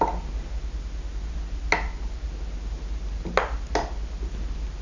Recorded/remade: recorded